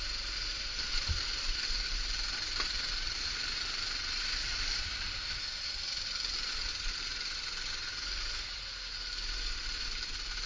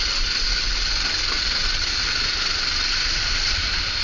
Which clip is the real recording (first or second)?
second